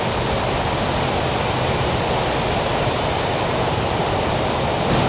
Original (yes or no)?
yes